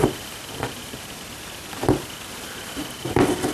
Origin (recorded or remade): recorded